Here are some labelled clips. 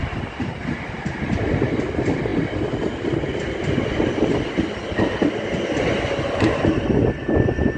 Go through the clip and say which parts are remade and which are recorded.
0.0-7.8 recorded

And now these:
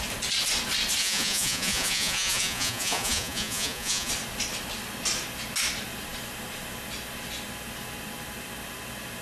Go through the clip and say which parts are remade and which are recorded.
0.0-1.0 recorded; 1.0-4.1 remade; 4.1-9.2 recorded

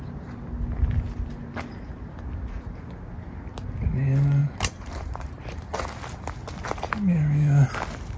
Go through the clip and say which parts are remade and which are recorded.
0.0-4.4 recorded; 4.4-5.4 remade; 5.4-8.2 recorded

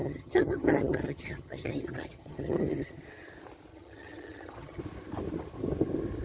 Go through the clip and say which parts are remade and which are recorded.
0.0-3.0 remade; 3.0-3.7 recorded; 3.7-4.8 remade; 4.8-6.2 recorded

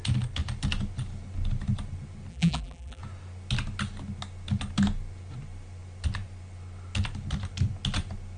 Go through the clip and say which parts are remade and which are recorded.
0.0-2.3 recorded; 2.3-3.0 remade; 3.0-8.4 recorded

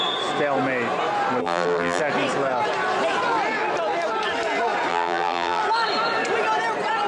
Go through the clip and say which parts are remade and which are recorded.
0.0-1.4 recorded; 1.4-2.0 remade; 2.0-4.9 recorded; 4.9-5.6 remade; 5.6-7.1 recorded

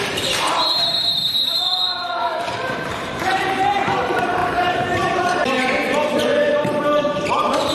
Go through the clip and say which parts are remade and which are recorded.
0.0-7.7 remade

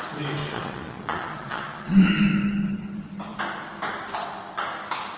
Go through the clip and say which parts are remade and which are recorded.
0.0-0.4 recorded; 0.4-2.1 remade; 2.1-5.2 recorded